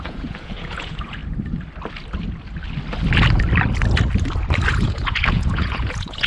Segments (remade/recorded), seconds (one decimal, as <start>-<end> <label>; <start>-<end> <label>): 0.0-1.2 remade; 1.2-4.7 recorded; 4.7-6.3 remade